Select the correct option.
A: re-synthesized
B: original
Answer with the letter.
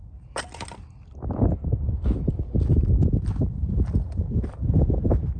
B